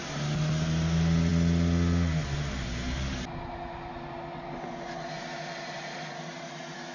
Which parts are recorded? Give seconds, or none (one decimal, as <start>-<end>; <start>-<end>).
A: 0.0-6.9

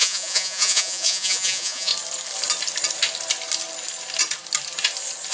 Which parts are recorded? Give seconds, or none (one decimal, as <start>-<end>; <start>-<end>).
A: 1.9-5.3

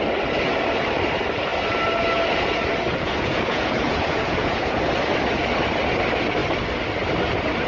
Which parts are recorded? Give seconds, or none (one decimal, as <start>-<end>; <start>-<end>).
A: 0.0-2.9; 4.8-7.7

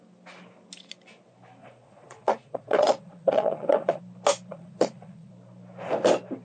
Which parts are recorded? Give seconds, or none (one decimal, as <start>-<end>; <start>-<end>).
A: 0.0-1.6; 4.0-4.5; 5.3-6.4

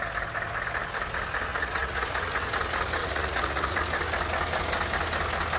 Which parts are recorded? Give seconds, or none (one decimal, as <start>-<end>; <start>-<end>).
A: 0.0-1.5; 2.5-3.0; 3.8-5.6

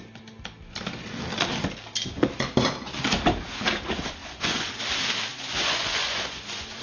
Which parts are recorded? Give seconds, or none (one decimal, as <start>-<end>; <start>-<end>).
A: 0.0-4.2; 4.8-5.3